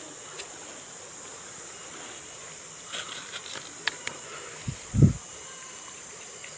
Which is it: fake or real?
real